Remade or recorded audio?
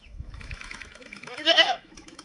remade